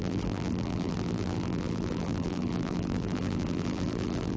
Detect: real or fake fake